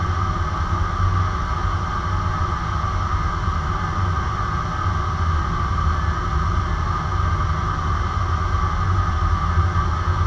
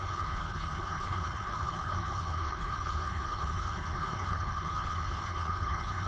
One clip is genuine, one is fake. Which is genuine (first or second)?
first